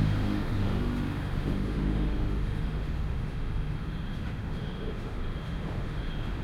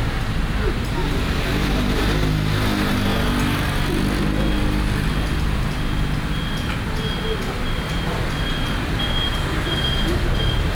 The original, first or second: second